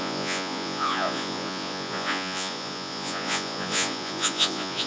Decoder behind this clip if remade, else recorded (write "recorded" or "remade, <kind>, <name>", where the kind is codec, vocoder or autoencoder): remade, vocoder, Vocos